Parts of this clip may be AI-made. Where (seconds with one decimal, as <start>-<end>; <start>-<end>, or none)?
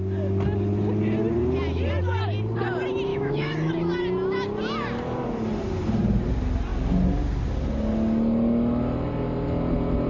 3.1-3.7